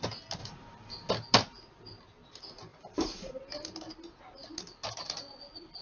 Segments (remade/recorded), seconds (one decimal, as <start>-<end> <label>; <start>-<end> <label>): 0.0-0.4 recorded; 0.4-1.1 remade; 1.1-2.7 recorded; 2.7-3.3 remade; 3.3-5.8 recorded

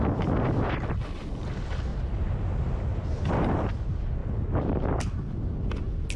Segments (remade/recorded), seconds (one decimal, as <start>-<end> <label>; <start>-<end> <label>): 0.0-1.9 recorded; 1.9-3.3 remade; 3.3-6.2 recorded

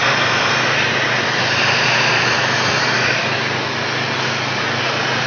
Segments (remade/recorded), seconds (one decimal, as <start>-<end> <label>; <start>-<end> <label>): 0.0-3.2 remade; 3.2-5.3 recorded

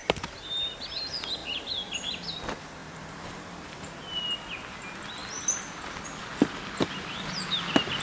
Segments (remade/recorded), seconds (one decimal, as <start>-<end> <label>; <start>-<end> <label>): 0.0-2.8 recorded; 2.8-3.9 remade; 3.9-8.0 recorded

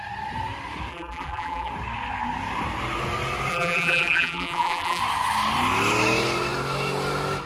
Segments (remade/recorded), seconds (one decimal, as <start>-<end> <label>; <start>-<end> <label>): 0.0-0.9 recorded; 0.9-1.7 remade; 1.7-3.5 recorded; 3.5-5.0 remade; 5.0-7.5 recorded

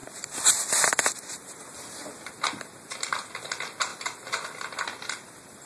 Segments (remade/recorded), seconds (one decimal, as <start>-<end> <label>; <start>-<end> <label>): 0.0-2.3 remade; 2.3-3.9 recorded; 3.9-4.6 remade; 4.6-5.7 recorded